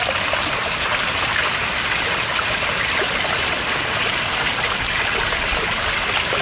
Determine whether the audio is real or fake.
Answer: real